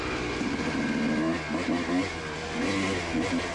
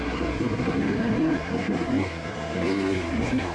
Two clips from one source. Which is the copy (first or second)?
second